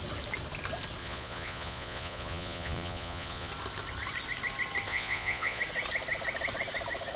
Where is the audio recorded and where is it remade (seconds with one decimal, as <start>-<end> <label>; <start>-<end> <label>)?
0.0-1.0 recorded; 1.0-3.5 remade; 3.5-4.9 recorded; 4.9-5.6 remade; 5.6-7.2 recorded